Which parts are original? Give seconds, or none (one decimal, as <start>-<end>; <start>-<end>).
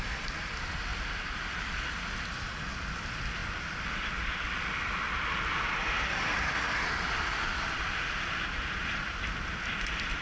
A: 0.0-10.2